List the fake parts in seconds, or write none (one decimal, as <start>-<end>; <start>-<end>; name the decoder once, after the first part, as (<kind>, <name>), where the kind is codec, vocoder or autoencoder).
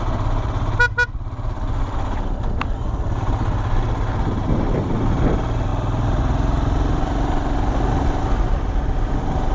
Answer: none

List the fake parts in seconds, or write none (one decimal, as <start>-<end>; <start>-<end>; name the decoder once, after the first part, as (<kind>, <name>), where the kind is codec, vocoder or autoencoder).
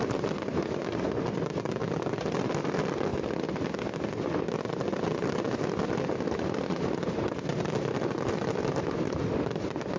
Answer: none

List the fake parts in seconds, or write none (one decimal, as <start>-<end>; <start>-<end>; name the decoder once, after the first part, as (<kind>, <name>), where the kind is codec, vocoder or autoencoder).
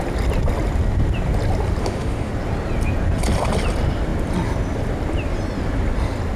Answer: 1.8-2.3 (autoencoder, DAC-VAE)